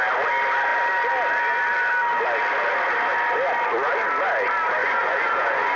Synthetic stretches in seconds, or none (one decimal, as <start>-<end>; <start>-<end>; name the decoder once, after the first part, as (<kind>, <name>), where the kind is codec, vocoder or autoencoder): 4.8-5.8 (vocoder, Vocos)